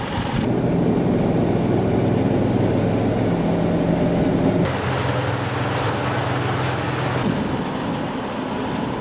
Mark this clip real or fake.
real